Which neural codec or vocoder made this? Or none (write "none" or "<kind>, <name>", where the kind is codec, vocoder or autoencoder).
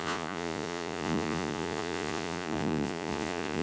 vocoder, Vocos